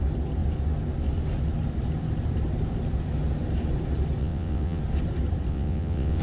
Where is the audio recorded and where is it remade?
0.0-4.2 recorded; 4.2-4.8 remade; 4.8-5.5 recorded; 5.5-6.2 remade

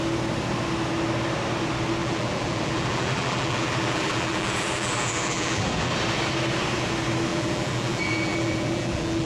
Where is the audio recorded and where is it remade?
0.0-2.0 recorded; 2.0-5.9 remade; 5.9-7.3 recorded; 7.3-9.3 remade

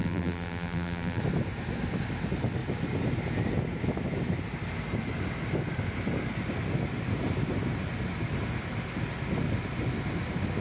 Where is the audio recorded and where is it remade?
0.0-1.2 remade; 1.2-10.6 recorded

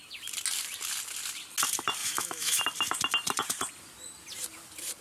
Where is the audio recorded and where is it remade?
0.0-2.0 recorded; 2.0-2.6 remade; 2.6-5.0 recorded

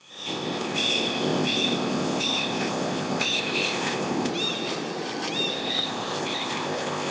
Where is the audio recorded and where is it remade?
0.0-4.3 remade; 4.3-5.5 recorded; 5.5-7.1 remade

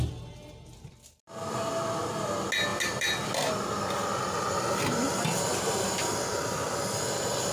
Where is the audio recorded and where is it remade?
0.0-2.7 recorded; 2.7-6.0 remade; 6.0-7.5 recorded